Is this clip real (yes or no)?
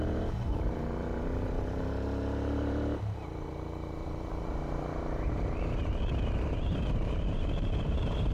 no